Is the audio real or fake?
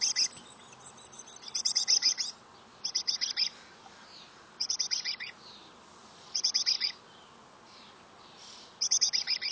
real